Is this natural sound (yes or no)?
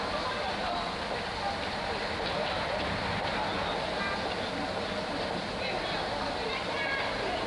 yes